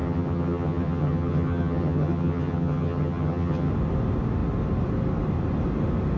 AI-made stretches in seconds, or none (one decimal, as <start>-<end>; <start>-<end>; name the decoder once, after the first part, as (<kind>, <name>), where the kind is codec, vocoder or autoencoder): 0.0-3.7 (vocoder, HiFi-GAN)